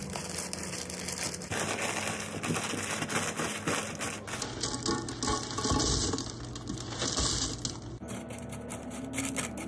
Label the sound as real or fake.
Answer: real